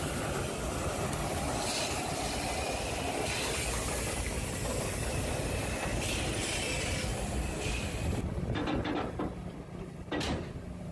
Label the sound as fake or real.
real